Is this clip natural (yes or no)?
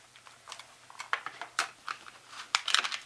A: yes